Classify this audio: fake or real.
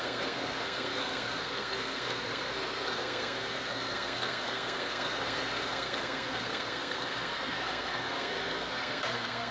fake